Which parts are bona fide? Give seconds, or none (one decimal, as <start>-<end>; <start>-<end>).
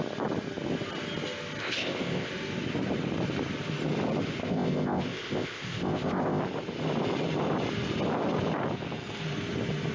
0.0-1.6; 2.3-4.4; 6.4-9.9